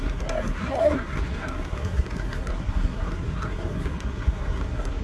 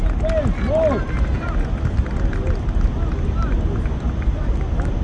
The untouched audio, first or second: second